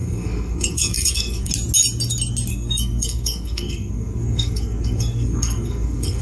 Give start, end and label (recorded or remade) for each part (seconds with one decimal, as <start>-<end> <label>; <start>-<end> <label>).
0.0-1.5 remade; 1.5-2.5 recorded; 2.5-6.2 remade